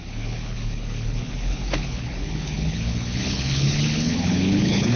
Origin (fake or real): fake